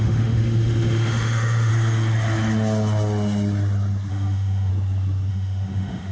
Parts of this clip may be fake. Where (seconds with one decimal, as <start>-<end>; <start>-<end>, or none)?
0.0-1.7; 4.1-4.7; 5.3-6.1